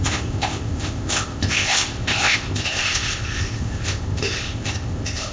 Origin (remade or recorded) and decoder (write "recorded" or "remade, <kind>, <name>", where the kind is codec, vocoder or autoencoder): remade, codec, ZipCodec